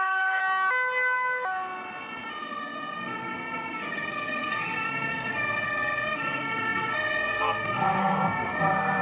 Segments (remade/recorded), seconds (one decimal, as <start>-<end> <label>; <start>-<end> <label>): 0.0-0.4 remade; 0.4-2.4 recorded; 2.4-9.0 remade